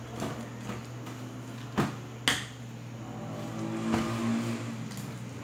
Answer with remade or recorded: recorded